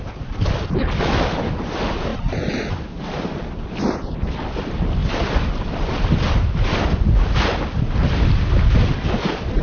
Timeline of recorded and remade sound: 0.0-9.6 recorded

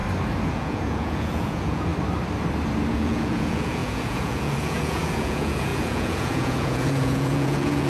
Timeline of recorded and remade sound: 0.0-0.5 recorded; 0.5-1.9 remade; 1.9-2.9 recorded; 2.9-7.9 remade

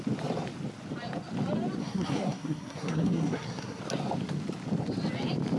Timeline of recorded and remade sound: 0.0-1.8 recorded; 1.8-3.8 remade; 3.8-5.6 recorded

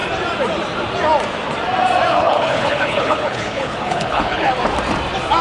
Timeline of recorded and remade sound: 0.0-2.1 recorded; 2.1-4.5 remade; 4.5-5.4 recorded

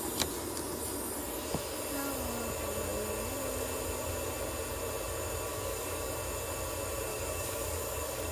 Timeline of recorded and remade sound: 0.0-5.5 recorded; 5.5-6.1 remade; 6.1-7.1 recorded; 7.1-8.3 remade

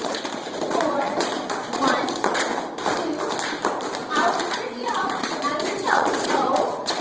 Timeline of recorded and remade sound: 0.0-2.5 remade; 2.5-4.4 recorded; 4.4-7.0 remade

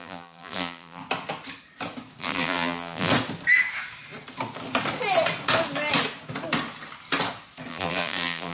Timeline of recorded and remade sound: 0.0-1.0 remade; 1.0-2.2 recorded; 2.2-3.1 remade; 3.1-7.7 recorded; 7.7-8.5 remade

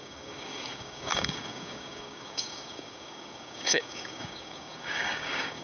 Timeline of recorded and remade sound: 0.0-5.6 remade